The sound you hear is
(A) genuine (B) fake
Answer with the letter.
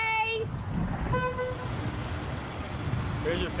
A